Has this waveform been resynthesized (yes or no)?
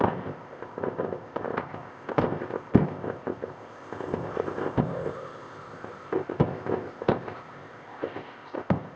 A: yes